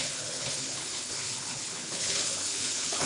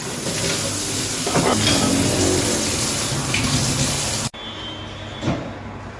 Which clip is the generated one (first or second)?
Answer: first